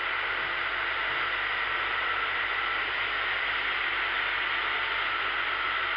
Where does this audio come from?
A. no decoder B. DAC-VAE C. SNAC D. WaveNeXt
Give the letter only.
A